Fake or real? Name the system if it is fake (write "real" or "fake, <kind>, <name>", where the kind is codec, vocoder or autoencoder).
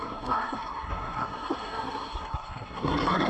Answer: fake, codec, SNAC